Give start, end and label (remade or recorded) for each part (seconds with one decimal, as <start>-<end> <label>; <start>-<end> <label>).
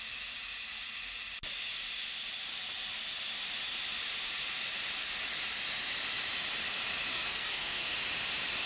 0.0-7.1 recorded; 7.1-7.9 remade; 7.9-8.7 recorded